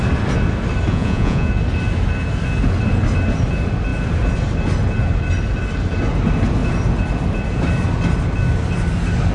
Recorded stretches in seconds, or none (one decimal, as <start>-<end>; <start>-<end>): 0.0-0.9; 1.5-9.3